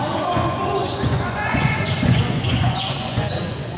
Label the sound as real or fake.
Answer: fake